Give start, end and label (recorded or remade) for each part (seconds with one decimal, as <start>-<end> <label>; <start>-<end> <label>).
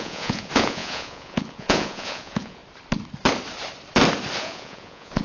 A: 0.0-2.6 remade; 2.6-4.4 recorded; 4.4-5.2 remade